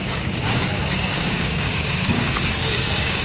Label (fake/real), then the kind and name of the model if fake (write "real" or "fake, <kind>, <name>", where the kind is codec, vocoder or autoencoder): fake, codec, DAC